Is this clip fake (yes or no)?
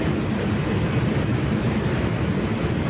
no